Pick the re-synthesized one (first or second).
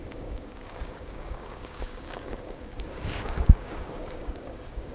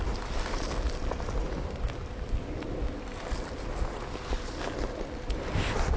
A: first